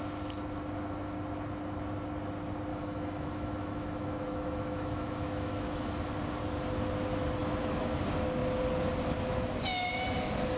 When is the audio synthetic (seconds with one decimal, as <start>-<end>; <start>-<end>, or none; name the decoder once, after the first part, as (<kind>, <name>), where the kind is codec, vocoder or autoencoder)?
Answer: 2.7-6.1 (autoencoder, DAC-VAE); 7.4-8.0